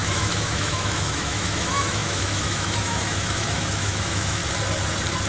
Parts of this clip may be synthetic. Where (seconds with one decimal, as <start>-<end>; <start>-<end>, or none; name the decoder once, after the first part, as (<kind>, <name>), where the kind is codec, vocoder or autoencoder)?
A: 0.0-4.4 (autoencoder, DAC-VAE)